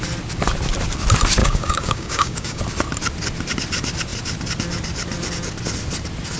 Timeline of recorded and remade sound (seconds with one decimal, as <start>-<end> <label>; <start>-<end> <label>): 0.0-1.4 recorded; 1.4-2.6 remade; 2.6-6.4 recorded